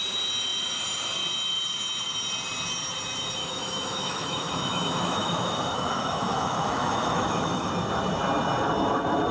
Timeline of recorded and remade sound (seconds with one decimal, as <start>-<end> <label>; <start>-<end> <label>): 0.0-3.4 recorded; 3.4-7.7 remade; 7.7-9.3 recorded